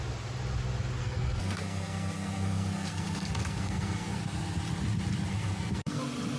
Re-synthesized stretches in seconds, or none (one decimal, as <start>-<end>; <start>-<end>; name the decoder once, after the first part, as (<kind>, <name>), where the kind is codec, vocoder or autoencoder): 1.0-4.2 (codec, SNAC); 5.3-6.0